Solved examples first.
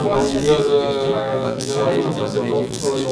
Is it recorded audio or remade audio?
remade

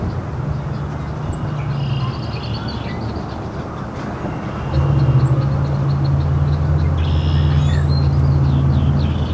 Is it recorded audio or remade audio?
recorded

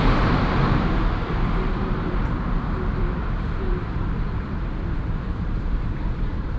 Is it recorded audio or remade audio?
remade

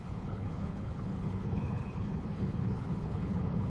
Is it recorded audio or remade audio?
remade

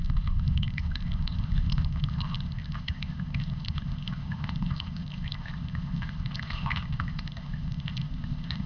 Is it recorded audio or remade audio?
remade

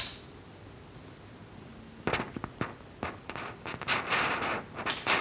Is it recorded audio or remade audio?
recorded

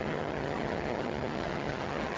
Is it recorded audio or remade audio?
remade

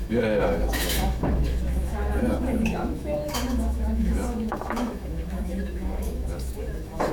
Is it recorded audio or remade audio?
remade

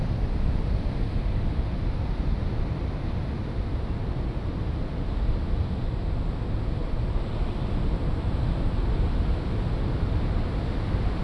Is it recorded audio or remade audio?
recorded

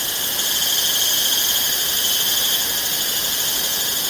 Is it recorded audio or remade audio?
recorded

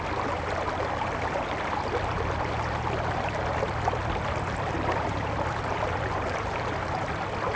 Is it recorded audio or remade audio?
recorded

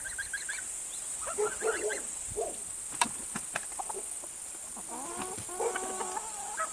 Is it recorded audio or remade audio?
recorded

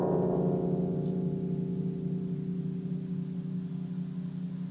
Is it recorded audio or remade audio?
recorded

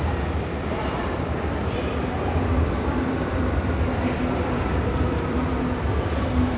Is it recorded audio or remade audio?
remade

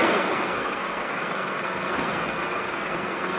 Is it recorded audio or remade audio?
remade